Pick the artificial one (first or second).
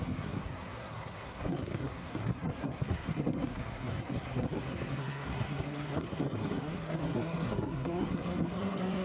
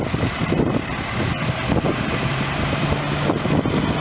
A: first